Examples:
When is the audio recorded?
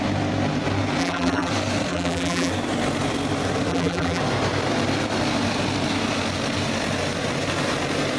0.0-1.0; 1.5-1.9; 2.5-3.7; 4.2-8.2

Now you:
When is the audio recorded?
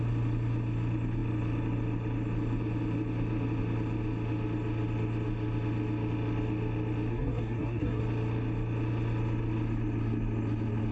0.0-7.1; 8.0-10.9